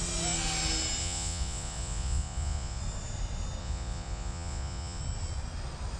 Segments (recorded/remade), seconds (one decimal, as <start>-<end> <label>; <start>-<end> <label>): 0.0-1.0 recorded; 1.0-2.8 remade; 2.8-3.6 recorded; 3.6-5.0 remade; 5.0-6.0 recorded